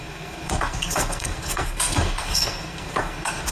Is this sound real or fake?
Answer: fake